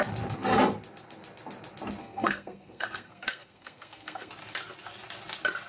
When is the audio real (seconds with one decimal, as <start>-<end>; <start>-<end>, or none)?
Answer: 0.0-2.0; 4.3-5.7